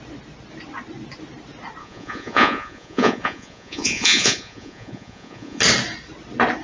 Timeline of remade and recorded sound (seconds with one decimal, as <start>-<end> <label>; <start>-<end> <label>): 0.0-1.8 recorded; 1.8-5.6 remade; 5.6-6.6 recorded